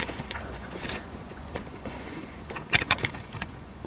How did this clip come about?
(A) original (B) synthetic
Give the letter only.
B